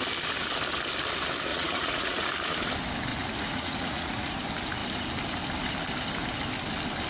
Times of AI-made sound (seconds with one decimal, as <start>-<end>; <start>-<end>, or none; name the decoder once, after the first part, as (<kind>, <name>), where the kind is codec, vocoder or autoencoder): 1.5-2.3 (vocoder, Vocos); 3.1-4.3